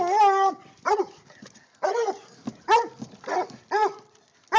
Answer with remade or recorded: recorded